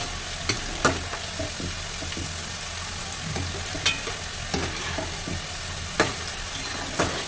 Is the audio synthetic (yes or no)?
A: no